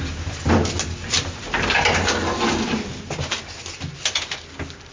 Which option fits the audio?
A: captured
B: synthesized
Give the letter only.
A